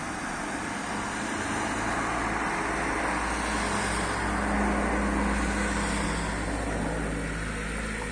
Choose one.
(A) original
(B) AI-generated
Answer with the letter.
A